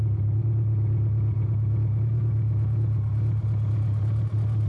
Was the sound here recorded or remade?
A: recorded